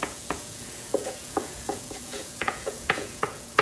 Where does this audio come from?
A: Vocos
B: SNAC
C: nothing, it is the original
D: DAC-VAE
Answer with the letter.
A